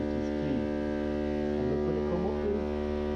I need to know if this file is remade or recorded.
recorded